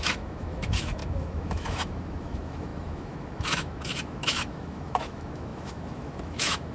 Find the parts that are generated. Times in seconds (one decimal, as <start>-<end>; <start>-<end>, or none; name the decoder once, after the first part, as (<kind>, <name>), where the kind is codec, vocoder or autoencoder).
0.0-6.7 (autoencoder, DAC-VAE)